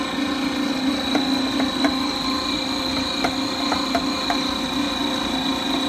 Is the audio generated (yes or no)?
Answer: no